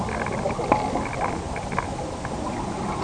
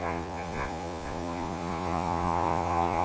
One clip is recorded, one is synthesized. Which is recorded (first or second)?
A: first